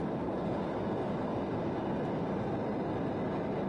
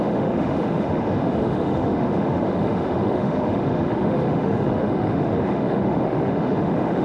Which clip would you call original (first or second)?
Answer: first